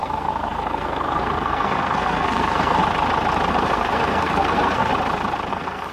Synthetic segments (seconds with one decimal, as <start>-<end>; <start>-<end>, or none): 0.0-2.8; 3.5-4.9; 5.5-5.9